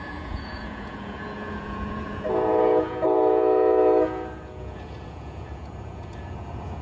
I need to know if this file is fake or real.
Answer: fake